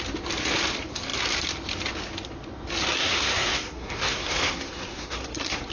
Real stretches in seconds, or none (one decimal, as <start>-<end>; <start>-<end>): 0.0-3.0